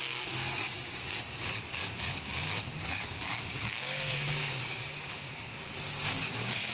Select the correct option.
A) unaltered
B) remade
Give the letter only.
B